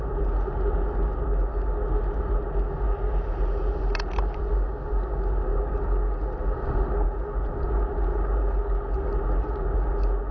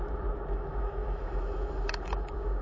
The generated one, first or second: second